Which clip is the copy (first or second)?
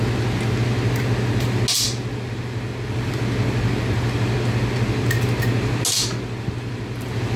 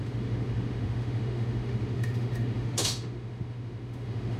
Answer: second